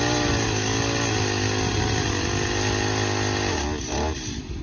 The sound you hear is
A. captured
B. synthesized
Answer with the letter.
A